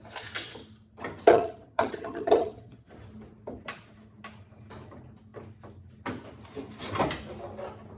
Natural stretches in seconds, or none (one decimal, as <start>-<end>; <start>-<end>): 0.0-1.3; 2.9-8.0